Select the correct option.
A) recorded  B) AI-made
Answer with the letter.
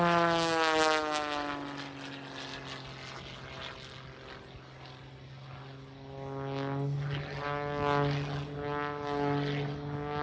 A